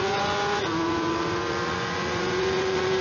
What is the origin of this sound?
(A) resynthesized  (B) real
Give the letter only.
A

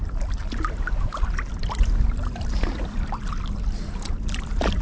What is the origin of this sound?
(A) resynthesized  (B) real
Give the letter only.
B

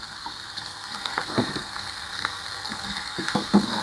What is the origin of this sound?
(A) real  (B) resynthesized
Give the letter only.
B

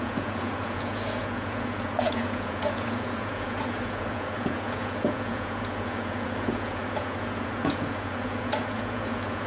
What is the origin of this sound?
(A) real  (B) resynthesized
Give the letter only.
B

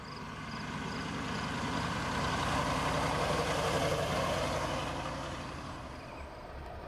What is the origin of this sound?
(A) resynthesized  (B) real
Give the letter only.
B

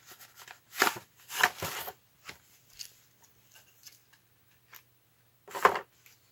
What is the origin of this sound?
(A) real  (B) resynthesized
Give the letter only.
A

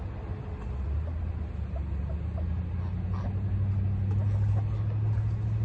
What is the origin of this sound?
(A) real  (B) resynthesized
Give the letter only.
A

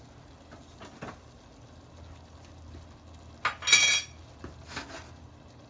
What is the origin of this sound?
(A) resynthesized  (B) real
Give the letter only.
B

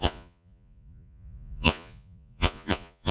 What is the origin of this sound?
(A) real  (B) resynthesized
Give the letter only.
B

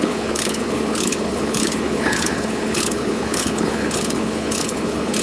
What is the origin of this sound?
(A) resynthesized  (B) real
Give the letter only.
A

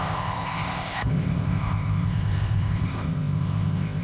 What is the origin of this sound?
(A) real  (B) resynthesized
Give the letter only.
B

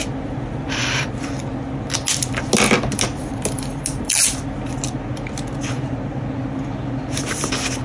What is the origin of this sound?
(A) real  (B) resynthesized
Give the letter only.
A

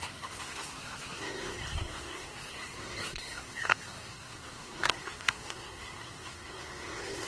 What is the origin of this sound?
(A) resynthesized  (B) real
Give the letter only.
A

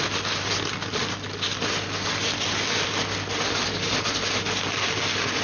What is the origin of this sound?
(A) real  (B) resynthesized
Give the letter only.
A